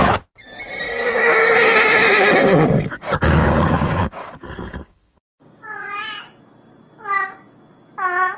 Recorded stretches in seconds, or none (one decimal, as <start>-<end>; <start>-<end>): 0.0-1.3; 6.2-8.4